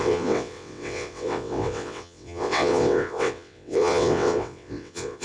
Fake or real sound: fake